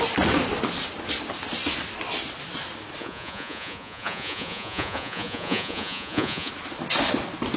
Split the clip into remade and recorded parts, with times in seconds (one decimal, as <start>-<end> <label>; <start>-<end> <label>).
0.0-3.0 recorded; 3.0-6.5 remade; 6.5-7.6 recorded